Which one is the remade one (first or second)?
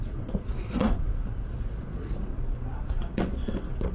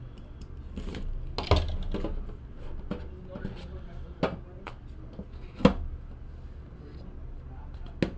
first